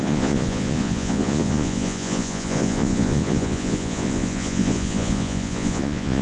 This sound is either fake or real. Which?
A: fake